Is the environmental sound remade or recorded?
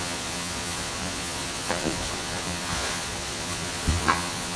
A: remade